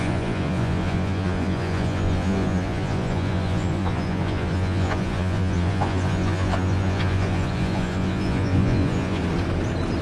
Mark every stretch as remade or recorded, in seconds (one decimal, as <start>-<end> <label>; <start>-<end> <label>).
0.0-9.2 remade; 9.2-10.0 recorded

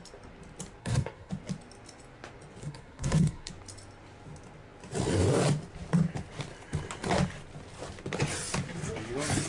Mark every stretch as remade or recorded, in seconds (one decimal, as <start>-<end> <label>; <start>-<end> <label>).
0.0-0.8 recorded; 0.8-1.3 remade; 1.3-2.6 recorded; 2.6-3.5 remade; 3.5-9.5 recorded